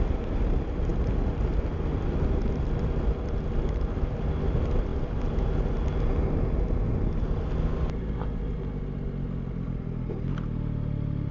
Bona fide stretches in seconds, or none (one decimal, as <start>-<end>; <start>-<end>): 0.0-11.3